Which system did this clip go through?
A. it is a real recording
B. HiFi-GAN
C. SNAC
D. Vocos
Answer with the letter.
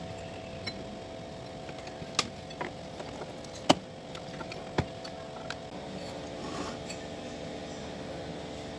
A